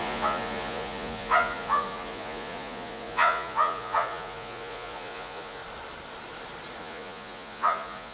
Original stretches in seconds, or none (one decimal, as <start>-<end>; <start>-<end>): 5.6-6.8